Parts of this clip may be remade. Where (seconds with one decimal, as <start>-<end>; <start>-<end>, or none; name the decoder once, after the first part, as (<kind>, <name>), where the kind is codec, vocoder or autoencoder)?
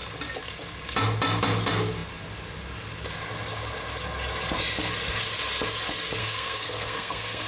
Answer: 6.2-7.5 (codec, SNAC)